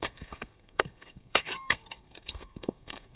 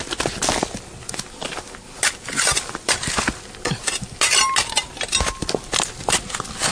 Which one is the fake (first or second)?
first